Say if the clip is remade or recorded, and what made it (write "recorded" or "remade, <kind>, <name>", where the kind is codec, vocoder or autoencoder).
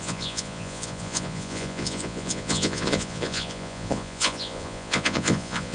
remade, vocoder, Vocos